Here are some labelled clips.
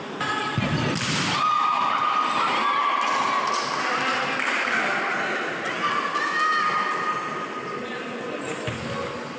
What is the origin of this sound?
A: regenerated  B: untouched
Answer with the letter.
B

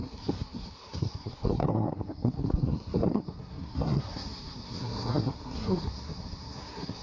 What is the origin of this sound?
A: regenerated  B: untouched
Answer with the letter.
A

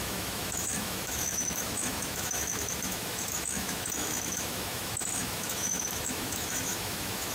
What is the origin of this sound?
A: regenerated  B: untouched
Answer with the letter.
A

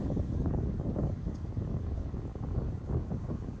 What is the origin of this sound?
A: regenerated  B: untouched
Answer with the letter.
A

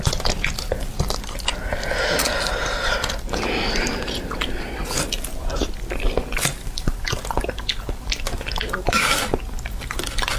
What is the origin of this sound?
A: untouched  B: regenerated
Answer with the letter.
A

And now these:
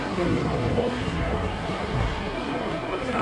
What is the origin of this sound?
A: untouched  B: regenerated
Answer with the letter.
B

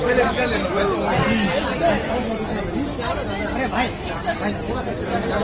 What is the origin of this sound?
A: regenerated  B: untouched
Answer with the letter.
B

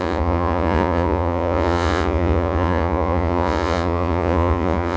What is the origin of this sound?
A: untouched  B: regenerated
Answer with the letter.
B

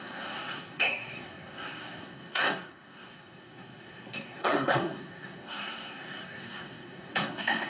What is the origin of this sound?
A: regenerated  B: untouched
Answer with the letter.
A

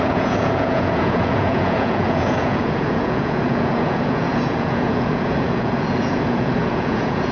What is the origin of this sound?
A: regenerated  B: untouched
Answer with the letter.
A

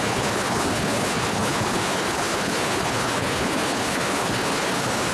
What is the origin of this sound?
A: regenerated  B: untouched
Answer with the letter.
A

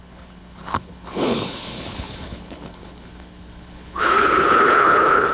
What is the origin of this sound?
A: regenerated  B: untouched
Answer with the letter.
A